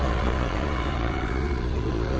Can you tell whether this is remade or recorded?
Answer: remade